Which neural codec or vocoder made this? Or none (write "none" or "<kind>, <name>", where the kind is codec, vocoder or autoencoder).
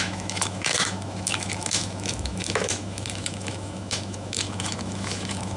autoencoder, DAC-VAE